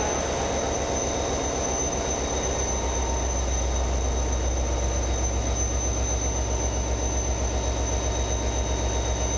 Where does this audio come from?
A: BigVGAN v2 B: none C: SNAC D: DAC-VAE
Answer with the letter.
B